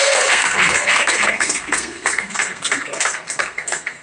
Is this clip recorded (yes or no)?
no